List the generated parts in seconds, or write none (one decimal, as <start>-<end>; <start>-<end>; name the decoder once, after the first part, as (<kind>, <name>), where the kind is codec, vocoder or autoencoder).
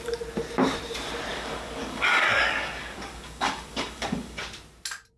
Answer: 1.3-4.4 (codec, DAC)